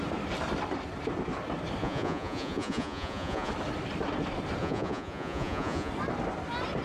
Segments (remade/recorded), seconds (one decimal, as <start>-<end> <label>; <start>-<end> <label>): 0.0-1.8 recorded; 1.8-3.5 remade; 3.5-4.6 recorded; 4.6-5.9 remade; 5.9-6.8 recorded